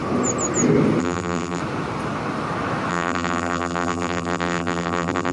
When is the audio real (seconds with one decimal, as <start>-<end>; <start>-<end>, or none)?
0.0-1.0; 1.6-2.9